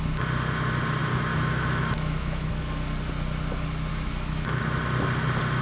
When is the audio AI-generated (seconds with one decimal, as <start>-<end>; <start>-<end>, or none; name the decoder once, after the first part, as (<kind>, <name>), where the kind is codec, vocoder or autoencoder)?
1.0-2.5 (autoencoder, DAC-VAE); 3.9-4.6

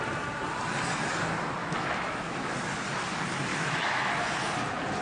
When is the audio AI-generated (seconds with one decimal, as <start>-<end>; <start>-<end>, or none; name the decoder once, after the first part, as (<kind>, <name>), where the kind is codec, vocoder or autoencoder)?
1.6-2.5 (autoencoder, DAC-VAE); 3.5-4.1

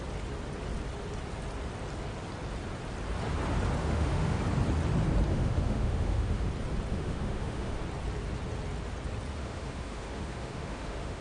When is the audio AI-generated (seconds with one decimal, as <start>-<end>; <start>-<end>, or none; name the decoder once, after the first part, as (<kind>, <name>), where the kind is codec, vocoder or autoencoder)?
3.8-4.4 (autoencoder, DAC-VAE); 5.3-6.5; 6.9-7.8; 9.4-11.2

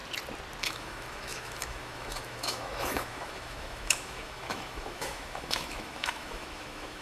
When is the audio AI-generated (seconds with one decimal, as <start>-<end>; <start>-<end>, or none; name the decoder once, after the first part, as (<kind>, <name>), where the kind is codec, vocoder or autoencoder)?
0.6-7.0 (autoencoder, DAC-VAE)

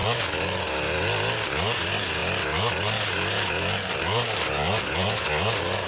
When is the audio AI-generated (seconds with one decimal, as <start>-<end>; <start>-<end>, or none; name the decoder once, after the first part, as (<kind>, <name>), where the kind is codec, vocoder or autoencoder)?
none

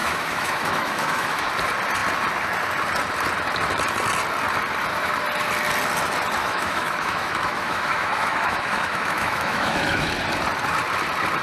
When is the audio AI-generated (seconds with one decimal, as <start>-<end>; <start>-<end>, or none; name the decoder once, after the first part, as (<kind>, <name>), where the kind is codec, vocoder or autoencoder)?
0.0-1.5 (autoencoder, DAC-VAE); 6.4-10.1